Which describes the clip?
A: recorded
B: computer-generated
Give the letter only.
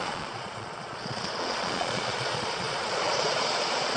B